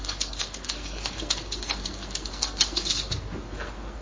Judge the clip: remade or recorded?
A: remade